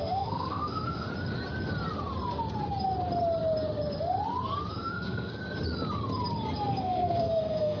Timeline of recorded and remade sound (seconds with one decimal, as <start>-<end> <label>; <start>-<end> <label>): 0.0-1.1 remade; 1.1-4.7 recorded; 4.7-5.4 remade; 5.4-6.8 recorded; 6.8-7.8 remade